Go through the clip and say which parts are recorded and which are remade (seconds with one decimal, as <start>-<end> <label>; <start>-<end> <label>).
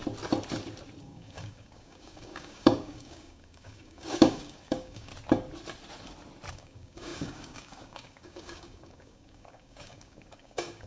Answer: 0.0-1.0 recorded; 1.0-5.1 remade; 5.1-6.5 recorded; 6.5-10.9 remade